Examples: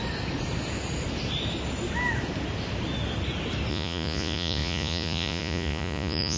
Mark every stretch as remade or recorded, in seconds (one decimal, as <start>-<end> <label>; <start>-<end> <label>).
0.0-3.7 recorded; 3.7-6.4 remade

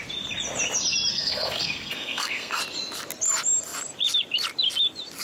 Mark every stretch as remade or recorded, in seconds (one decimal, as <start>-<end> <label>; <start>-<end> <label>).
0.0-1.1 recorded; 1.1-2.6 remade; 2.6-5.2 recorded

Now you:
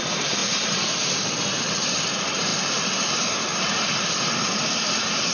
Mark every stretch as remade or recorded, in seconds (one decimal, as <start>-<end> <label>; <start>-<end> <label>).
0.0-2.5 remade; 2.5-5.3 recorded